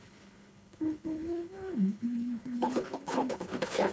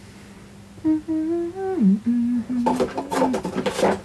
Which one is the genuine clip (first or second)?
second